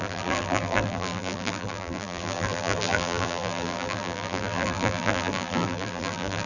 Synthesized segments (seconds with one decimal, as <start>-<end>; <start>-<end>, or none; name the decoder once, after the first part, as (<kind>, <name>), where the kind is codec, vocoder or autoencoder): 0.0-6.5 (vocoder, BigVGAN v2)